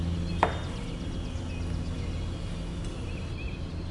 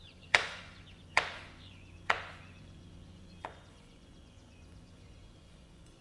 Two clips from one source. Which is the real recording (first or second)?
first